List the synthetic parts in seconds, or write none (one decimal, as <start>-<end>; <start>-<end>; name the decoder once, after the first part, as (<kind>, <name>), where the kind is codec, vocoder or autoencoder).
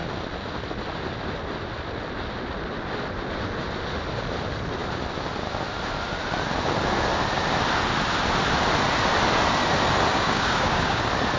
10.1-11.0 (codec, DAC)